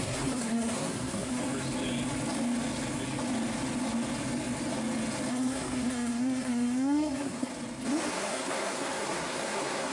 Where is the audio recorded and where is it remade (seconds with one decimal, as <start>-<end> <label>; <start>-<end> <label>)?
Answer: 0.0-1.4 remade; 1.4-5.3 recorded; 5.3-7.5 remade; 7.5-8.1 recorded; 8.1-9.9 remade